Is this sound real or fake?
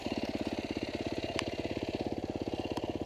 real